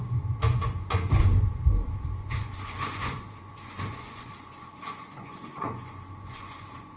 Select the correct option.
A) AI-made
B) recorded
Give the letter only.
A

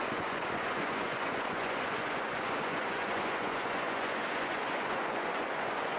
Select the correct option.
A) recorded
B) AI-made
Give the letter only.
B